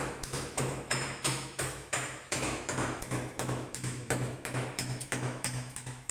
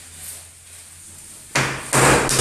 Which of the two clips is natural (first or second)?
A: second